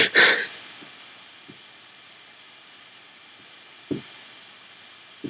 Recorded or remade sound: remade